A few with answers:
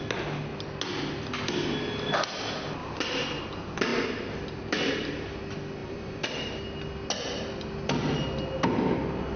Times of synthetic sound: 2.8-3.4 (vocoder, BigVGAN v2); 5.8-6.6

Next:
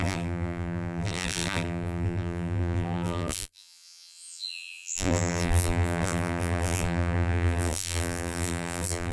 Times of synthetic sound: 0.0-9.1 (vocoder, BigVGAN v2)

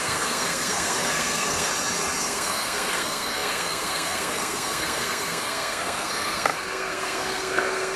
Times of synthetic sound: 0.0-1.7 (codec, SNAC); 2.2-8.0

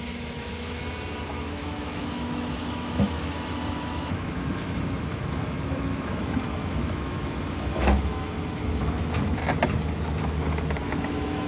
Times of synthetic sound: 0.0-0.8 (autoencoder, DAC-VAE); 1.3-9.4; 9.9-11.5